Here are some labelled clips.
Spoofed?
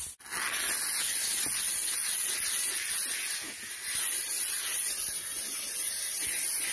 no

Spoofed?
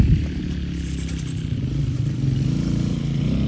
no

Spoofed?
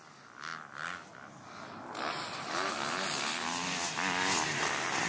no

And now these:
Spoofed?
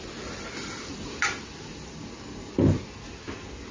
no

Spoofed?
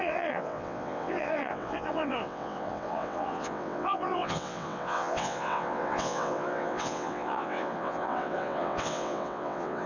yes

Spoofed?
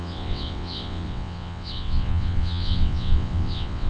yes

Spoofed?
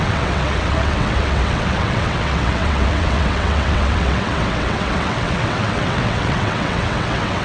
yes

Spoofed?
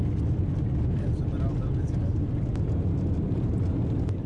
no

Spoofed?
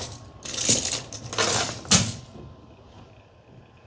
no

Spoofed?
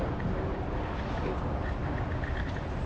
no